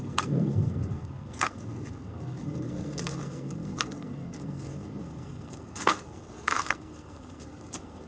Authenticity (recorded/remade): remade